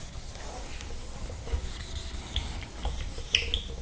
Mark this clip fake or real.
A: real